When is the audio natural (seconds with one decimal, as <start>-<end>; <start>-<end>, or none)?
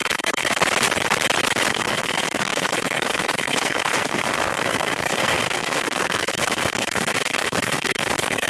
0.6-1.7